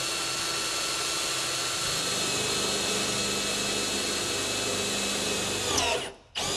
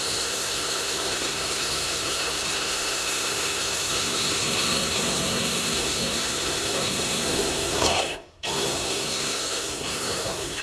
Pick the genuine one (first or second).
first